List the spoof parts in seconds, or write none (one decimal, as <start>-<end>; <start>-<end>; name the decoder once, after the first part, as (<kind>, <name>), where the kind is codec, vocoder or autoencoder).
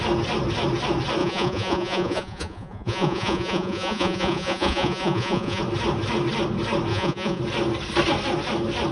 1.2-5.6 (vocoder, Vocos); 6.9-7.4